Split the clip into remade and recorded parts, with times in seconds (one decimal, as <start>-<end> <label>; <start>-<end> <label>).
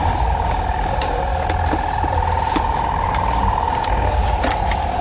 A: 0.0-1.3 remade; 1.3-2.6 recorded; 2.6-4.2 remade; 4.2-5.0 recorded